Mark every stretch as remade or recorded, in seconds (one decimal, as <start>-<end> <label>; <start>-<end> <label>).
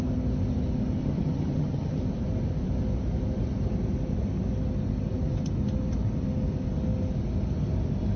0.0-1.0 recorded; 1.0-2.0 remade; 2.0-8.2 recorded